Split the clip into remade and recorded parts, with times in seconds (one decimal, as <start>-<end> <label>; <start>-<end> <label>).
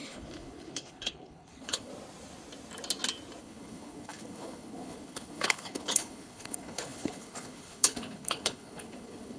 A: 0.0-1.9 remade; 1.9-3.4 recorded; 3.4-9.4 remade